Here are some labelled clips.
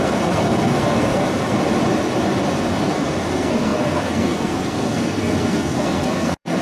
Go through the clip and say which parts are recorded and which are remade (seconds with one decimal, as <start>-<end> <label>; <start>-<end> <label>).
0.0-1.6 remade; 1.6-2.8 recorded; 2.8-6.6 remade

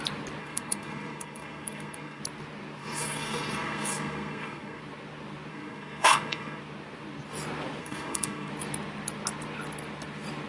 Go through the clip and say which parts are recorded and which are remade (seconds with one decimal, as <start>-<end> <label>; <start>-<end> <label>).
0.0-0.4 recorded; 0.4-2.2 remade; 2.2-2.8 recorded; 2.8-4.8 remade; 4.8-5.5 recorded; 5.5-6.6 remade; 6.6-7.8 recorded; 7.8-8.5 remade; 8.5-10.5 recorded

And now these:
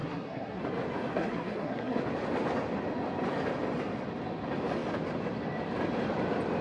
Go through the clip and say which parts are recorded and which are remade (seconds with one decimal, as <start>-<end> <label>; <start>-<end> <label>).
0.0-0.6 remade; 0.6-1.1 recorded; 1.1-2.0 remade; 2.0-6.6 recorded

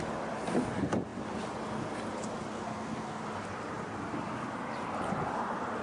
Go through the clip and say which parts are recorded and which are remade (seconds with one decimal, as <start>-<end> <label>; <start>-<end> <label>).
0.0-2.5 recorded; 2.5-3.2 remade; 3.2-5.8 recorded